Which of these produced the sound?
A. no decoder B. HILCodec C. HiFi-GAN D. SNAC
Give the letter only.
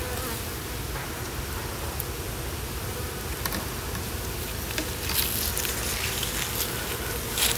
A